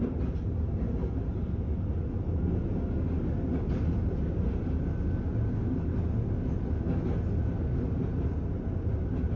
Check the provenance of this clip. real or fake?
real